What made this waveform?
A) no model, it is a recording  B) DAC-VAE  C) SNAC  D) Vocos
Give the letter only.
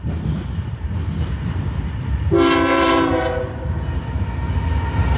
A